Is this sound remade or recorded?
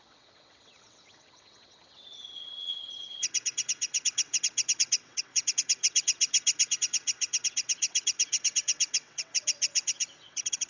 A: remade